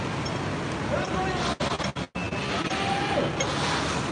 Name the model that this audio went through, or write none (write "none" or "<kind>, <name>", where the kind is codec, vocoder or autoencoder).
none